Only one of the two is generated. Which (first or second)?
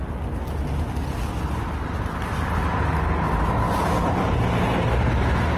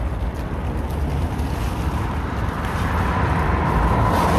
second